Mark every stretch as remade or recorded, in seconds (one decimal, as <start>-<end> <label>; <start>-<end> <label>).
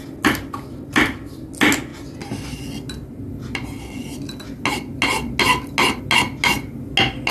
0.0-7.3 recorded